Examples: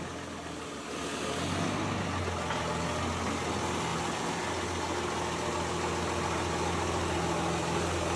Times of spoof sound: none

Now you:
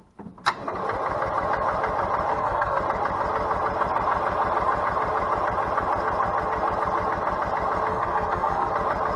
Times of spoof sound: 2.3-2.8 (codec, SNAC); 7.9-8.7

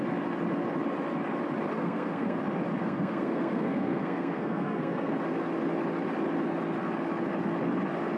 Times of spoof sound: 1.7-2.4 (codec, SNAC); 2.8-5.1